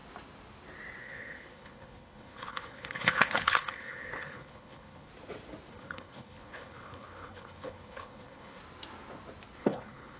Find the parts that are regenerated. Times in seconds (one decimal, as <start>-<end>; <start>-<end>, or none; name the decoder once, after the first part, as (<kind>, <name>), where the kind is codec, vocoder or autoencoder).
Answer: 1.0-5.1 (codec, HILCodec); 5.7-8.6; 9.6-10.2